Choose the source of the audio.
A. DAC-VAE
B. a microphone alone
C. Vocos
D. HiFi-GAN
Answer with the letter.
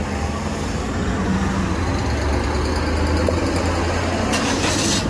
B